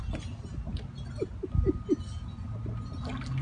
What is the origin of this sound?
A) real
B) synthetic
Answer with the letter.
A